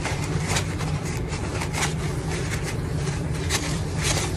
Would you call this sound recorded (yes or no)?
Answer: yes